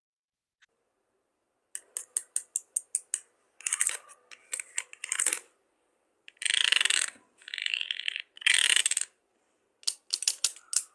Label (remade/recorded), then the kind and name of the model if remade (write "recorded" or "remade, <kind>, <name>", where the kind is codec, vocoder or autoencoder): recorded